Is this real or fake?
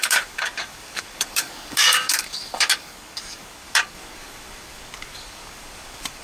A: fake